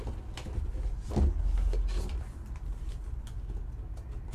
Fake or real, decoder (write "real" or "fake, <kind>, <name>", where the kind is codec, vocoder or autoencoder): real